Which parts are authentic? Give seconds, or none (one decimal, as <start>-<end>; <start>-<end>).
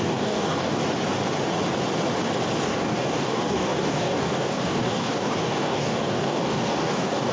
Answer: 0.8-2.6